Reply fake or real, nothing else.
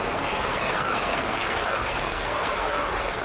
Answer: fake